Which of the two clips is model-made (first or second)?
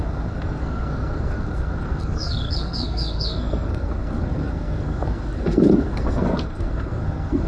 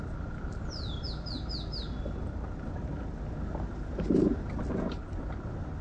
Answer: first